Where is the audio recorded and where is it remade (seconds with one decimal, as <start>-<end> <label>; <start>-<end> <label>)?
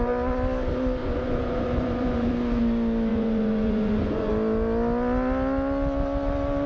0.0-1.0 recorded; 1.0-2.3 remade; 2.3-3.1 recorded; 3.1-4.3 remade; 4.3-6.7 recorded